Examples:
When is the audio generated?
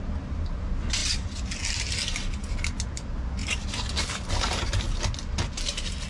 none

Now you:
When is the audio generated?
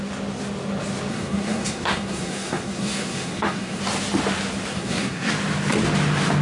1.1-3.8; 4.7-5.3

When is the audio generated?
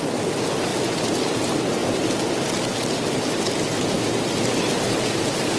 0.7-1.4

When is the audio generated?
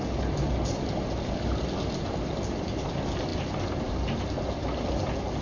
none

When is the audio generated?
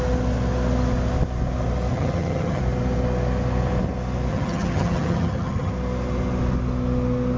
1.9-2.6; 4.3-5.7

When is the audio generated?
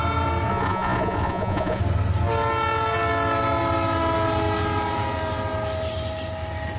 0.5-1.8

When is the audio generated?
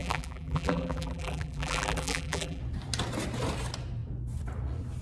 0.0-2.6